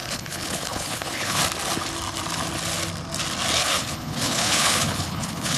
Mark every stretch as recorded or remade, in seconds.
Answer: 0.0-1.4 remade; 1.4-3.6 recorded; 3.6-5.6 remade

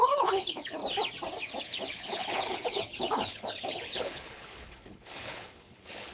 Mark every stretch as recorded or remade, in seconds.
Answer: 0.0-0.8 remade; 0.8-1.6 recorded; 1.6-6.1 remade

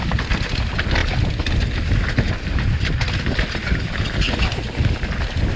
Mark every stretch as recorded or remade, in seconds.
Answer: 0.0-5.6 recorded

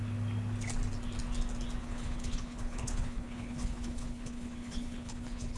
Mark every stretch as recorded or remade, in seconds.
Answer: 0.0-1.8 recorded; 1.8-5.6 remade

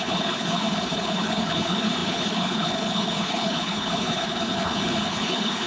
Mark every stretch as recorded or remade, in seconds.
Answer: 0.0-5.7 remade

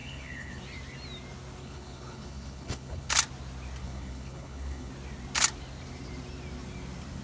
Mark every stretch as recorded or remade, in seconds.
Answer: 0.0-0.6 remade; 0.6-1.6 recorded; 1.6-3.1 remade; 3.1-3.8 recorded; 3.8-4.9 remade; 4.9-7.2 recorded

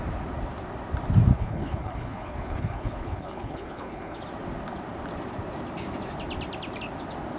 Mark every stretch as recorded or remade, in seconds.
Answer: 0.0-1.3 recorded; 1.3-4.2 remade; 4.2-7.4 recorded